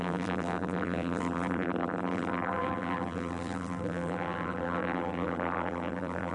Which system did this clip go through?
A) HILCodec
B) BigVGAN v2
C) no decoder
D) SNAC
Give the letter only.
B